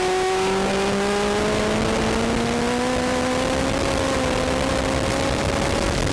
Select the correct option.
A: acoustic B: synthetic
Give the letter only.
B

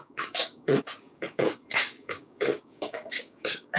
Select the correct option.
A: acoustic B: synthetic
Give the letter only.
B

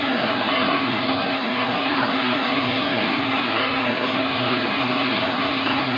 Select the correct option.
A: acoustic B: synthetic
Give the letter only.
B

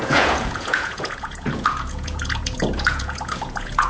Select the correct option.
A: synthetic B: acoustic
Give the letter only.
A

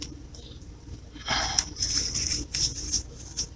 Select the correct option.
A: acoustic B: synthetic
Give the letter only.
A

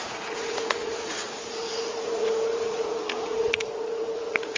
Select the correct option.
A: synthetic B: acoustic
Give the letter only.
A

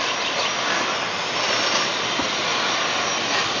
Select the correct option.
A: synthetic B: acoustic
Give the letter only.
B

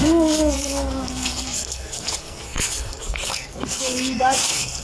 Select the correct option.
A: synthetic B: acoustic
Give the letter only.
A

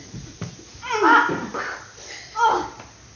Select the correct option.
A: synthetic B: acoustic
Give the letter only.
A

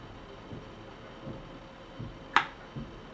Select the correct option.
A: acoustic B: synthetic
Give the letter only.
A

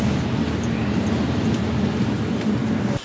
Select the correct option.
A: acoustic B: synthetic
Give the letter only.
A